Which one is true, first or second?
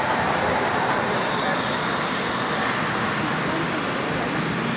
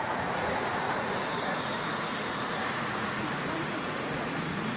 first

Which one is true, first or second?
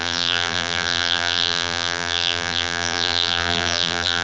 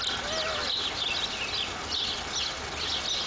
second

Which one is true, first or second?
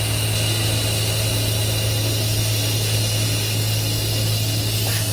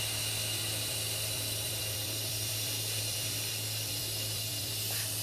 first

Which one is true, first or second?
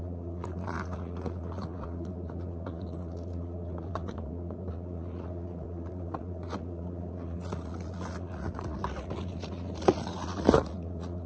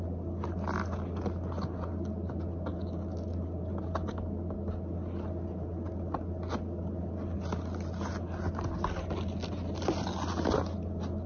second